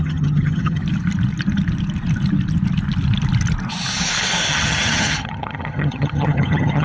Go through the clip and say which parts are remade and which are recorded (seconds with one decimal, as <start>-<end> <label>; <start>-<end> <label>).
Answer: 0.0-0.8 remade; 0.8-4.5 recorded; 4.5-6.8 remade